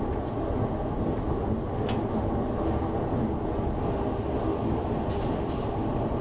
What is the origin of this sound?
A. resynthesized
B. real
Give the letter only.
B